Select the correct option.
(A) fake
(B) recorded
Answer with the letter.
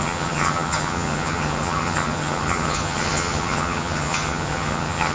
A